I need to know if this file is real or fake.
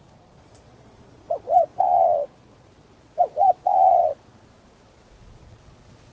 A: fake